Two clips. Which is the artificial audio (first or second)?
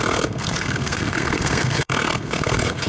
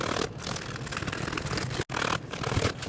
first